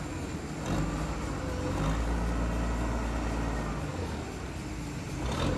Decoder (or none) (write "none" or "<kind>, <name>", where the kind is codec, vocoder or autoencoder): none